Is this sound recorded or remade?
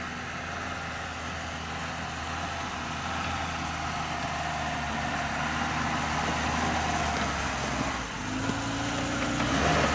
recorded